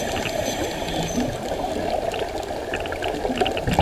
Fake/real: real